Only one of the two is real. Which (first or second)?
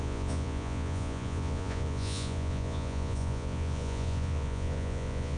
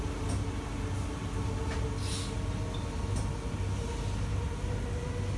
second